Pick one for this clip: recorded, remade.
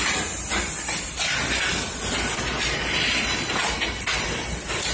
recorded